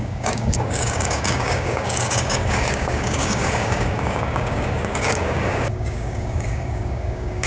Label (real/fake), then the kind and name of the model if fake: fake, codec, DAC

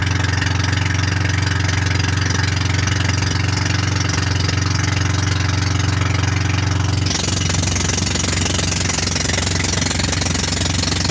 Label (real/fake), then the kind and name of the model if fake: real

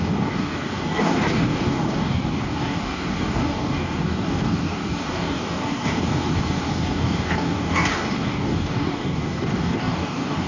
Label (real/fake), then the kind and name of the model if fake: fake, codec, DAC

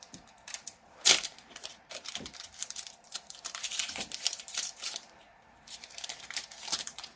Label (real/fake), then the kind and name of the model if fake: fake, vocoder, BigVGAN v2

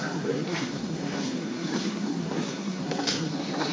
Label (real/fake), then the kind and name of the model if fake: fake, codec, SNAC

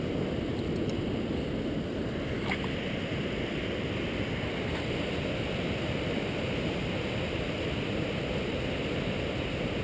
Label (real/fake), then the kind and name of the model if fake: real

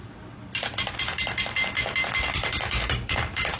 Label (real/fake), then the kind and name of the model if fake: real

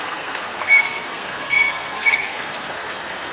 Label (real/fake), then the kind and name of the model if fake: fake, codec, SNAC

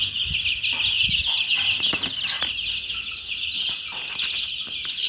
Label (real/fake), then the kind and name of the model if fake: real